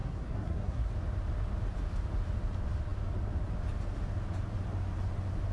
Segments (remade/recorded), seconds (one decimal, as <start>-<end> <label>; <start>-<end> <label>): 0.0-0.9 remade; 0.9-5.5 recorded